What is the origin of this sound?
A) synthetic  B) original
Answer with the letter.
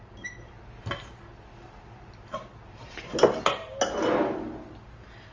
B